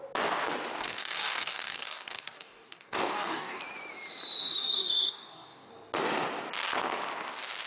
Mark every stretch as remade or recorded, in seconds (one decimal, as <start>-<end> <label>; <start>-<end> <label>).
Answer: 0.0-0.8 recorded; 0.8-3.6 remade; 3.6-4.4 recorded; 4.4-5.7 remade; 5.7-7.7 recorded